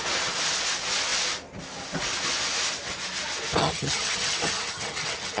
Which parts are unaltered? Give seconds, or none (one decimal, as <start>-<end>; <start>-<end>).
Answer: 0.0-3.6